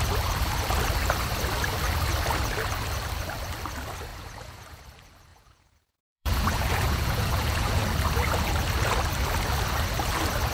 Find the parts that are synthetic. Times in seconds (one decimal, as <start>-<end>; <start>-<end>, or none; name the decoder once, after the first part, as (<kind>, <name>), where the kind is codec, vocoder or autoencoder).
4.1-4.8 (vocoder, Vocos); 5.3-7.8